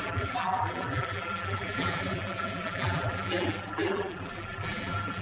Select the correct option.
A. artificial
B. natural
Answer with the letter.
A